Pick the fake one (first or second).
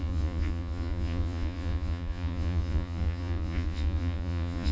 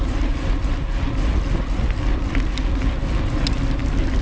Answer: first